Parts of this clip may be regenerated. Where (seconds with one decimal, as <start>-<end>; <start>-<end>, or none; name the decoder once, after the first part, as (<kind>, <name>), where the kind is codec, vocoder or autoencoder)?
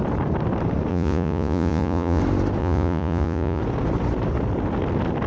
0.9-2.2 (vocoder, Vocos); 2.6-3.6